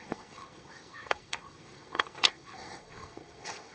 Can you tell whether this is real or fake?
fake